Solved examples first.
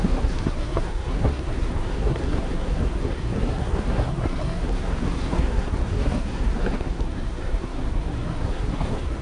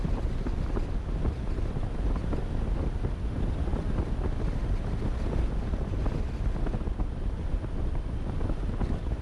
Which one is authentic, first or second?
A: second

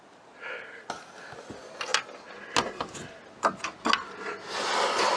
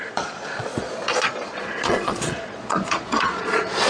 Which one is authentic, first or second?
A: first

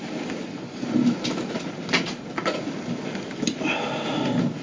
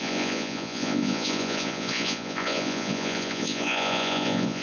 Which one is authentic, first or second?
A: first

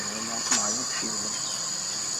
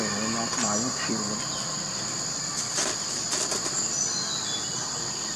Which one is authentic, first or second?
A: second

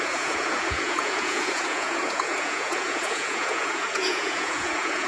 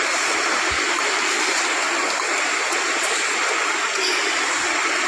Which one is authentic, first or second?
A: second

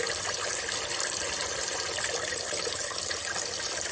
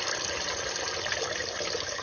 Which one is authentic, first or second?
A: second